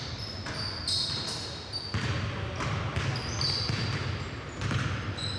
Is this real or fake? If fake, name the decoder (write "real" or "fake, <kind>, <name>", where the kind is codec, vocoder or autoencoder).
real